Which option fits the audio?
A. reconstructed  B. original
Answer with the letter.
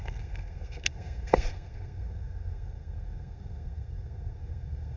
A